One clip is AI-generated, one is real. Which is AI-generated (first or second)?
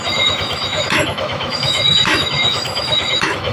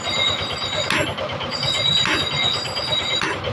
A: first